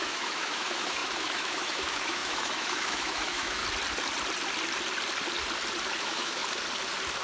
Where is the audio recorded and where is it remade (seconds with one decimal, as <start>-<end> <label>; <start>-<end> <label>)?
0.0-3.6 remade; 3.6-6.0 recorded; 6.0-6.4 remade; 6.4-7.2 recorded